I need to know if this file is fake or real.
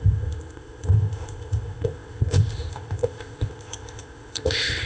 fake